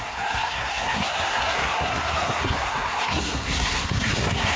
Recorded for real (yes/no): no